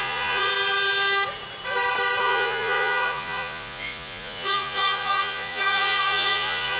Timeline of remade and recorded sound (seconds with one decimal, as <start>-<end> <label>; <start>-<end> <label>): 0.0-0.5 remade; 0.5-2.2 recorded; 2.2-6.8 remade